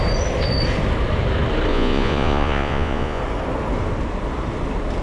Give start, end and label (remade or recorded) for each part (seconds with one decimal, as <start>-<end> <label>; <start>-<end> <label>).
0.0-1.7 recorded; 1.7-3.2 remade; 3.2-5.0 recorded